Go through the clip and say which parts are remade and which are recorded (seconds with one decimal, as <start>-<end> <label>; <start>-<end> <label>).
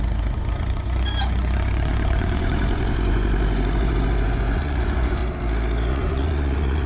0.0-5.2 remade; 5.2-5.9 recorded; 5.9-6.9 remade